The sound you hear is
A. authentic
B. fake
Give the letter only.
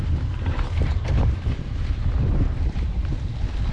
A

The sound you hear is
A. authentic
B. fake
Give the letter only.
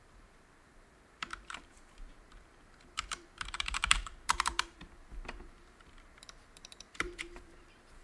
B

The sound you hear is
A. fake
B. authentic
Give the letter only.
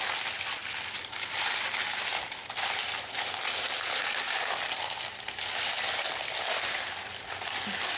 B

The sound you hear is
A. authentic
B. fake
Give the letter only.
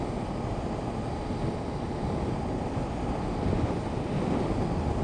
A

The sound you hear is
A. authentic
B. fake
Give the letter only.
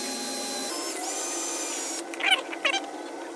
A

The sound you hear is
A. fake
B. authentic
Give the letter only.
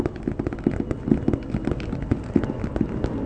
B